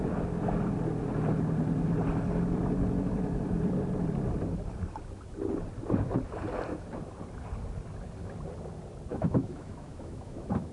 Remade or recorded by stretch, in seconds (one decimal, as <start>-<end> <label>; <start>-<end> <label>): 0.0-9.1 recorded; 9.1-10.7 remade